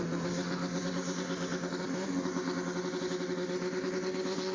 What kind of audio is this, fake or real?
real